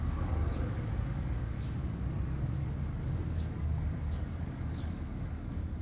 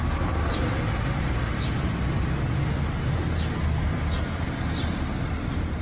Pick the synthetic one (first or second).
first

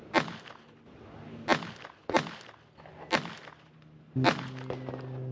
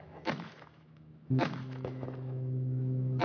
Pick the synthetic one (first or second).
second